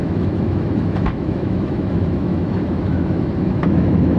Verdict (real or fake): fake